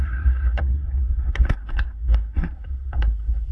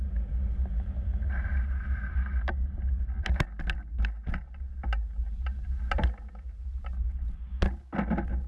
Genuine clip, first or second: second